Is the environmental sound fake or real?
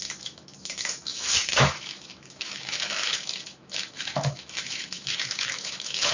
fake